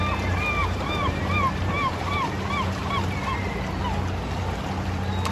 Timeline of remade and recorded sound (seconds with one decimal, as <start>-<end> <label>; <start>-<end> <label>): 0.0-0.6 recorded; 0.6-3.8 remade; 3.8-5.3 recorded